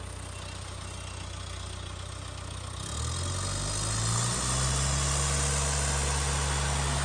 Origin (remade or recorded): recorded